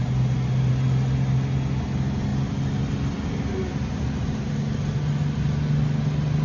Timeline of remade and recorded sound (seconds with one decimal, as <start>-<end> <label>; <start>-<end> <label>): 0.0-6.4 recorded

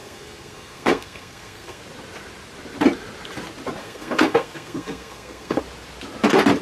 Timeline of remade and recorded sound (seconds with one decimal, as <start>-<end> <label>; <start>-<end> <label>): 0.0-1.8 remade; 1.8-3.8 recorded; 3.8-5.6 remade; 5.6-6.6 recorded